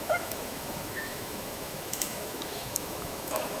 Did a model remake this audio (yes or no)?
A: yes